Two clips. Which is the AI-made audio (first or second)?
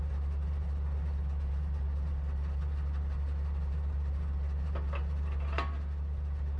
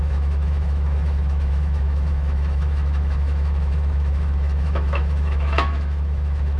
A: second